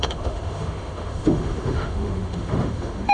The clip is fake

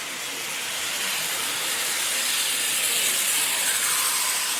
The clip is real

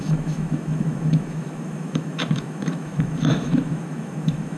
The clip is fake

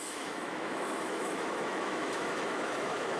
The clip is fake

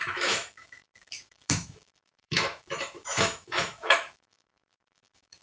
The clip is fake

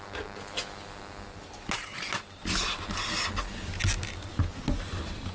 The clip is real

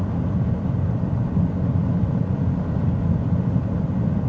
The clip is real